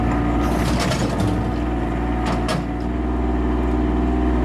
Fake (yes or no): no